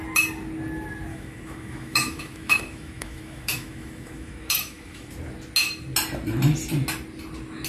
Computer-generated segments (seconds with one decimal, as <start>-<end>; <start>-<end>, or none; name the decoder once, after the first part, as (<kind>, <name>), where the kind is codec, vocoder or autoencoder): 1.1-5.1 (autoencoder, DAC-VAE)